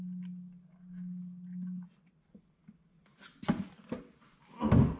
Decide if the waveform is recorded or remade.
recorded